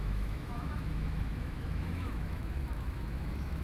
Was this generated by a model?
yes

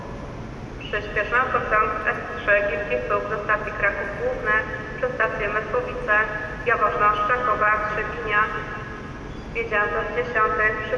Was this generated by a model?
no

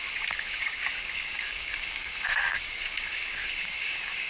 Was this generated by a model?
yes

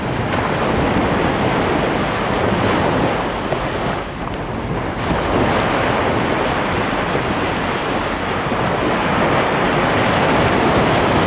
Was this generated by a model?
no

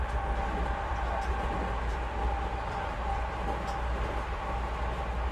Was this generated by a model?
no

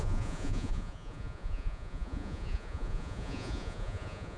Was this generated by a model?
yes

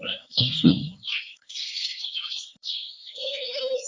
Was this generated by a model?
yes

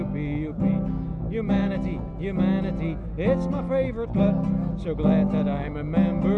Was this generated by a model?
no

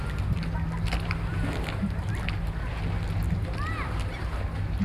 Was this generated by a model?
no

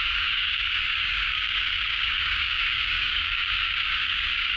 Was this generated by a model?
yes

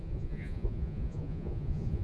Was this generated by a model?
yes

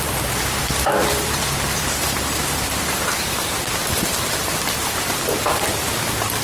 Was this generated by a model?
yes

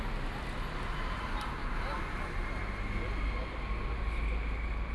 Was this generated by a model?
no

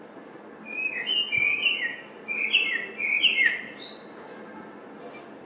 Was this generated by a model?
no